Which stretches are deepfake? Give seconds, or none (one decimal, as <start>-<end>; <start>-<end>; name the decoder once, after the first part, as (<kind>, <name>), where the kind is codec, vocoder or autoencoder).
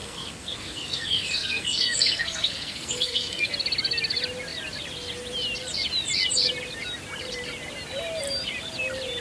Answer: 0.0-3.5 (codec, SNAC)